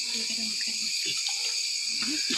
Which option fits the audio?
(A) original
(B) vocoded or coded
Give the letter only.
A